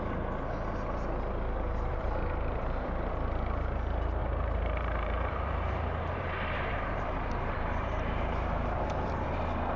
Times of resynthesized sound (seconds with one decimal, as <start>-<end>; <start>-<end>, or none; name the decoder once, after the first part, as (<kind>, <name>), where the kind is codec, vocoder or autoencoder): 1.9-3.1 (vocoder, BigVGAN v2); 4.2-9.4